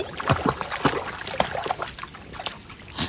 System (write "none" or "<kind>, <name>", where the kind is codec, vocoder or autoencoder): none